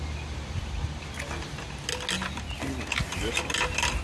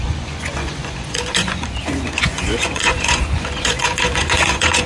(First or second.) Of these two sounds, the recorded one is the first